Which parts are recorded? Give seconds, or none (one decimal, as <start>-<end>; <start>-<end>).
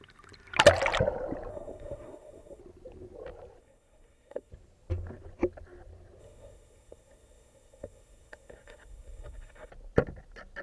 0.0-1.5; 2.6-3.6; 4.5-6.2; 9.7-10.6